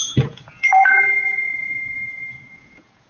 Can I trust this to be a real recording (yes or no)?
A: no